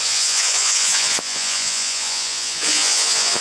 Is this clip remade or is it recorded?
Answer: remade